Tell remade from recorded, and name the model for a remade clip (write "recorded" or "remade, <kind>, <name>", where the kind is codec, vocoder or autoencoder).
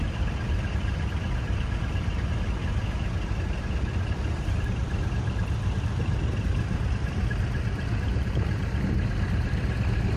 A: recorded